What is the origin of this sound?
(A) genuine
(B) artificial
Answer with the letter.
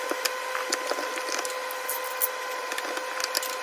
A